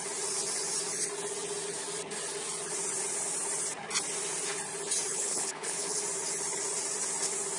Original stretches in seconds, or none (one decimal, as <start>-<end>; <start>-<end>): 0.0-5.1; 6.0-7.6